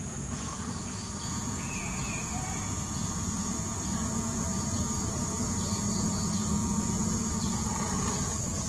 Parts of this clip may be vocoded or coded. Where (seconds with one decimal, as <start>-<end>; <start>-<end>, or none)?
0.0-8.7